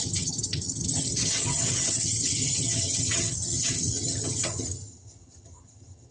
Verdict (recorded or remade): remade